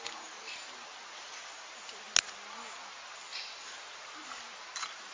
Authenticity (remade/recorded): recorded